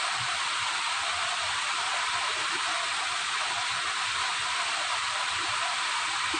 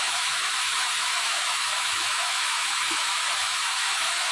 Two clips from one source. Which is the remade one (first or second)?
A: second